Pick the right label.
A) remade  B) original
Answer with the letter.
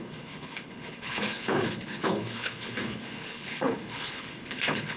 A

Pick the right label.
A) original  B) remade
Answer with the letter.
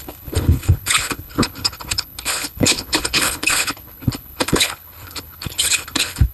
B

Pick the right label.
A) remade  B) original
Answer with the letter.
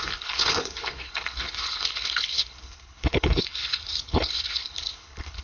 A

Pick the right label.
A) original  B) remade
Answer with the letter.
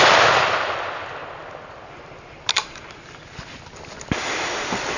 A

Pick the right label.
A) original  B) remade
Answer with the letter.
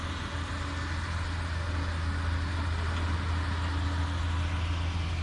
A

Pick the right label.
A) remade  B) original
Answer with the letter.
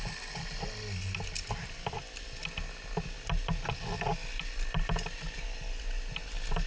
B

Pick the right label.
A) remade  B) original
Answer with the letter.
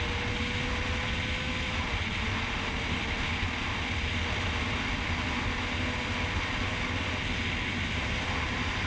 B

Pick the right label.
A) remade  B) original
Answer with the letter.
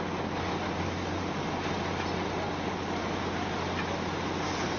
B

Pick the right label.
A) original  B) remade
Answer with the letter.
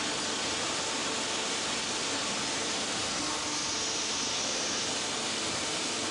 A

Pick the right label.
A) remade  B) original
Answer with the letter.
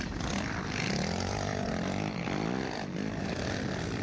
B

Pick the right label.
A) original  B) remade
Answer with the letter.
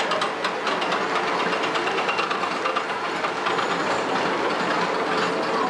A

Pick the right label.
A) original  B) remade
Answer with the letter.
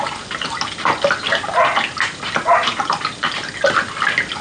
A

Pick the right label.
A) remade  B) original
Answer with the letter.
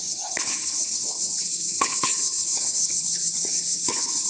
A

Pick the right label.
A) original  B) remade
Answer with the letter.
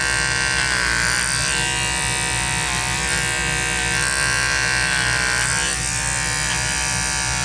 A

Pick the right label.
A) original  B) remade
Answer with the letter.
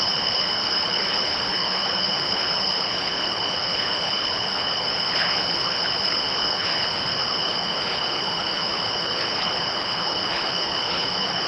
B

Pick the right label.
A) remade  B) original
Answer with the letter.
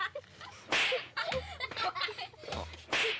B